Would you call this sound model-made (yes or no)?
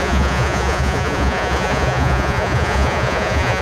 yes